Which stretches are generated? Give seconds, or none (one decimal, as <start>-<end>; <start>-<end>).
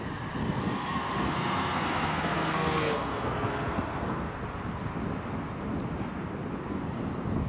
0.4-4.3